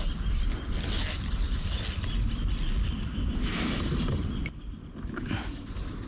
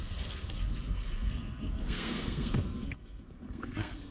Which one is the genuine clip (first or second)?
first